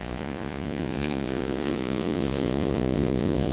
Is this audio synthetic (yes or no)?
yes